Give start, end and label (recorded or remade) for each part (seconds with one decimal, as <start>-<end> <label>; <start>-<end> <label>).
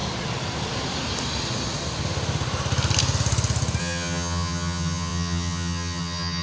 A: 0.0-3.8 recorded; 3.8-6.4 remade